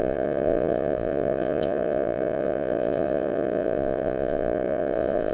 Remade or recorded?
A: remade